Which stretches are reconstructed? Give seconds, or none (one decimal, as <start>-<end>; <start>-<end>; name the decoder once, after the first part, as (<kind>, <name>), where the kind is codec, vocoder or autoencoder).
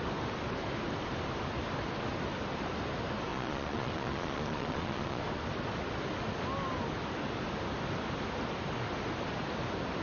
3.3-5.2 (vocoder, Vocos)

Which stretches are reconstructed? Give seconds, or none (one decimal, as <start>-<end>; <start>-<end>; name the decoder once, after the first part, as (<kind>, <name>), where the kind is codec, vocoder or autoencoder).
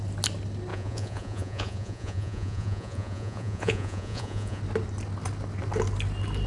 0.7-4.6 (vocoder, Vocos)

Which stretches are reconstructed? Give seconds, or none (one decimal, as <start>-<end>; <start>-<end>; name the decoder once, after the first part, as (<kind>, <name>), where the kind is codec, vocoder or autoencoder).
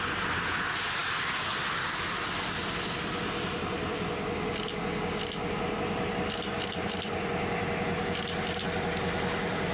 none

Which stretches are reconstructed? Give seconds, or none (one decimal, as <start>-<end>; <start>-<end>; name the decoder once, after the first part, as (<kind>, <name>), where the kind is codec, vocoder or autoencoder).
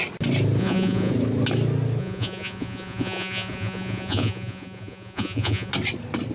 0.6-1.1 (vocoder, Vocos); 2.0-5.7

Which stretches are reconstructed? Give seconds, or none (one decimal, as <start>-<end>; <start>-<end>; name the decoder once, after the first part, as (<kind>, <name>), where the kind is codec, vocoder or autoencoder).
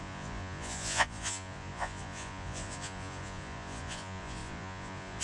0.0-5.2 (vocoder, Vocos)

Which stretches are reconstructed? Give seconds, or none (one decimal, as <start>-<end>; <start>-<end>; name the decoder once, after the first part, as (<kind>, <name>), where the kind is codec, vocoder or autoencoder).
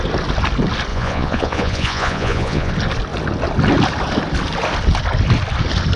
0.9-2.7 (vocoder, Vocos)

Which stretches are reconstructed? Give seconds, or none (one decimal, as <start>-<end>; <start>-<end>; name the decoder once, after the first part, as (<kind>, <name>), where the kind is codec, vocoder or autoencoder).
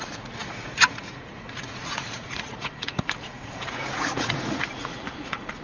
0.0-5.6 (vocoder, Vocos)